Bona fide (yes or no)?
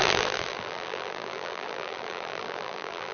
no